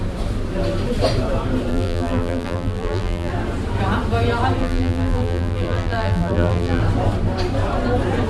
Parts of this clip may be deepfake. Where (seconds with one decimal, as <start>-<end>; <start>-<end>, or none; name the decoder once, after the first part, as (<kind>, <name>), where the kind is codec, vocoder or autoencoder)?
1.7-3.3 (vocoder, BigVGAN v2); 4.6-6.8